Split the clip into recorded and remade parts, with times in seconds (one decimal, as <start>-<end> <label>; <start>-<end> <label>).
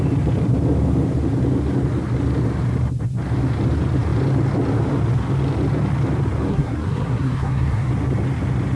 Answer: 0.0-6.5 recorded; 6.5-7.9 remade; 7.9-8.8 recorded